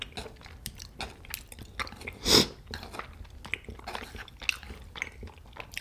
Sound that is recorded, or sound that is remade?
recorded